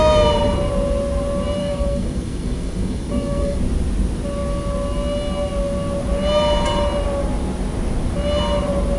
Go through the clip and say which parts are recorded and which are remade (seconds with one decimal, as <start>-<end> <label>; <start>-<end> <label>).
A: 0.0-1.6 recorded; 1.6-3.6 remade; 3.6-9.0 recorded